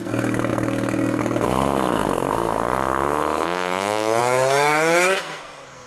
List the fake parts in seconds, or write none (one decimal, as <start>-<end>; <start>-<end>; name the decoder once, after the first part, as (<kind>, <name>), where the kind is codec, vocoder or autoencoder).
0.0-5.9 (codec, SNAC)